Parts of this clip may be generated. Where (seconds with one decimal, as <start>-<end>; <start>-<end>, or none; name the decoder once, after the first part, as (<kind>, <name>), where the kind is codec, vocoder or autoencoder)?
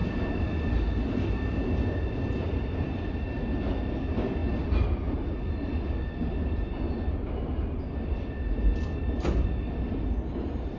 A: none